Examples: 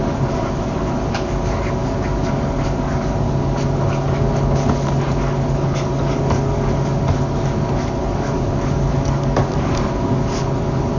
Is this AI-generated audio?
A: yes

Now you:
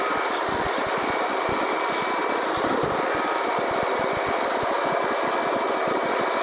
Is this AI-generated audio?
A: no